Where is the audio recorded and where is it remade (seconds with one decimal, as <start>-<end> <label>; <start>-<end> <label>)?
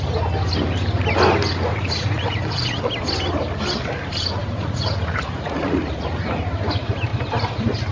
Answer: 0.0-1.7 recorded; 1.7-2.8 remade; 2.8-4.4 recorded; 4.4-6.4 remade; 6.4-7.9 recorded